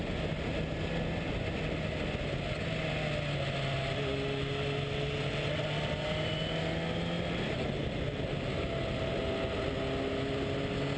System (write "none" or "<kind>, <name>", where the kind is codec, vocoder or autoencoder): none